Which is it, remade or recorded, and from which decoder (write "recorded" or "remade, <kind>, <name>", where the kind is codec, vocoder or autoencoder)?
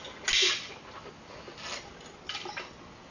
recorded